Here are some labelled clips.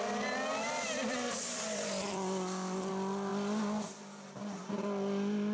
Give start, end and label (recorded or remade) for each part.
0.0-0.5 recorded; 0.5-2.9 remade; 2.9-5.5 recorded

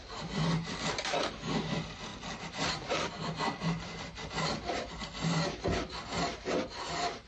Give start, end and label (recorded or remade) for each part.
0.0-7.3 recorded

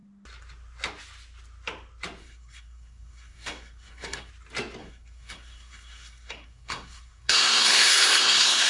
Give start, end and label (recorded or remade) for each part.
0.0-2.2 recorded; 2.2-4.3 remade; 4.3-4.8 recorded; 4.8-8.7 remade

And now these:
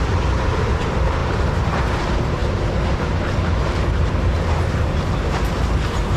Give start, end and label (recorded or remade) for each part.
0.0-6.2 remade

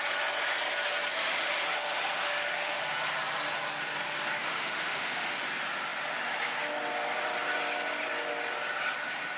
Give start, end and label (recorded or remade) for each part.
0.0-1.2 recorded; 1.2-2.8 remade; 2.8-4.4 recorded; 4.4-5.4 remade; 5.4-9.4 recorded

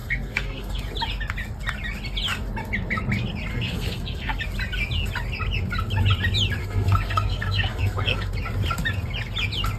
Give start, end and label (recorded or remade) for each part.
0.0-0.8 remade; 0.8-3.5 recorded; 3.5-4.4 remade; 4.4-6.6 recorded; 6.6-8.3 remade; 8.3-9.8 recorded

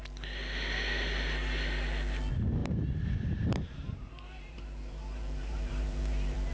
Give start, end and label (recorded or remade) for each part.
0.0-2.6 recorded; 2.6-6.5 remade

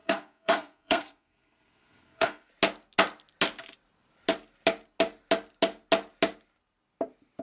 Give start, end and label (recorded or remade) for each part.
0.0-2.5 remade; 2.5-7.4 recorded